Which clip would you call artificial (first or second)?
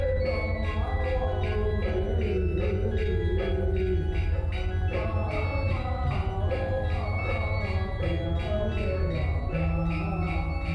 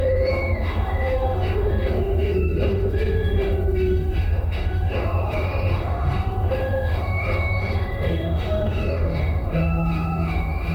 second